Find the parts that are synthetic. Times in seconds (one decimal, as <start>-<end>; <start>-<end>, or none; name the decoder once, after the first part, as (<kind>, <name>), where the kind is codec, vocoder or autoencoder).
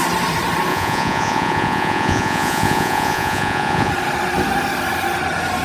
0.7-3.9 (vocoder, Vocos)